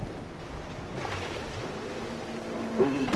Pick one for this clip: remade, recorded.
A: recorded